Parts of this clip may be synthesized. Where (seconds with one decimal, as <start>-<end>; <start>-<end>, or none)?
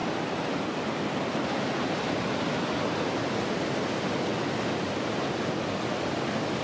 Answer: 4.3-5.2